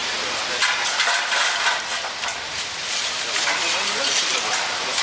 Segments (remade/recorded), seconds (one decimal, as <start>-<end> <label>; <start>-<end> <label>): 0.0-3.0 recorded; 3.0-5.0 remade